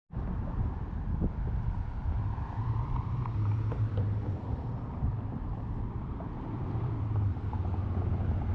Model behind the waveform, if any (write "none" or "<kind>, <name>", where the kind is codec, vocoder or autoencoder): vocoder, BigVGAN v2